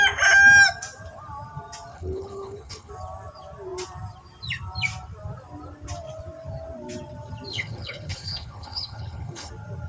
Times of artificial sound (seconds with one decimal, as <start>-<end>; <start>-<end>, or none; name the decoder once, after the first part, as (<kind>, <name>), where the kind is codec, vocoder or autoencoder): 1.9-2.9 (codec, HILCodec); 7.5-9.5